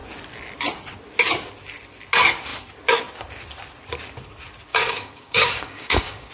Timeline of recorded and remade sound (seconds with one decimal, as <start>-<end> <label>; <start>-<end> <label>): 0.0-4.7 recorded; 4.7-6.3 remade